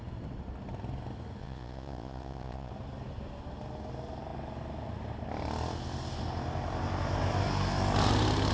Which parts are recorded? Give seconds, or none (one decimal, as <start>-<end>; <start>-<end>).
0.0-1.4; 2.7-8.5

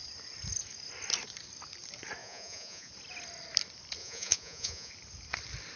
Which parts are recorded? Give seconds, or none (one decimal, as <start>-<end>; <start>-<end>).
0.0-2.2; 2.9-4.0; 4.9-5.8

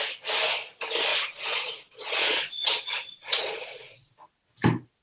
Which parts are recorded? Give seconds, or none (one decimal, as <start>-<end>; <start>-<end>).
0.0-1.1; 4.1-5.0

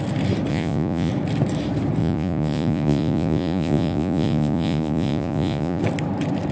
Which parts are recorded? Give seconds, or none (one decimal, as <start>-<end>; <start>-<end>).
0.0-0.5; 1.1-2.0; 5.8-6.5

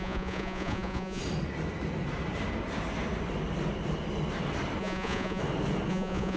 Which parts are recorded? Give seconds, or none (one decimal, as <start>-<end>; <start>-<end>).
1.2-4.8; 5.4-5.9

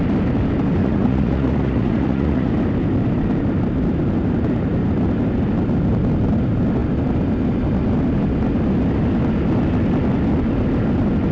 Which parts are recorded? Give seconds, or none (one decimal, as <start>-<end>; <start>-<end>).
0.0-0.8; 2.5-11.3